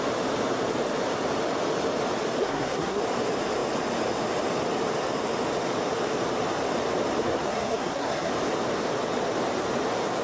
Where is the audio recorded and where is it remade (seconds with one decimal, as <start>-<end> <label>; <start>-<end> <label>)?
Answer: 0.0-2.4 recorded; 2.4-3.0 remade; 3.0-7.2 recorded; 7.2-8.3 remade; 8.3-10.2 recorded